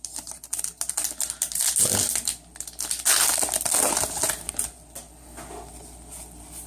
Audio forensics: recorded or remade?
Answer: recorded